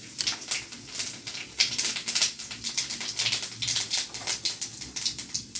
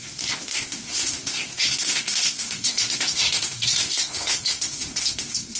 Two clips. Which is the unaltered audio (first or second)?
first